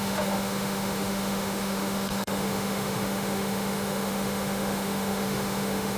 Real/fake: fake